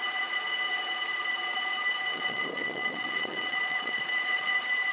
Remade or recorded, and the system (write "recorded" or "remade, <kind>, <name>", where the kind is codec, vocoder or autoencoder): remade, vocoder, Vocos